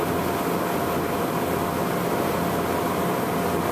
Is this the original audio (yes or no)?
yes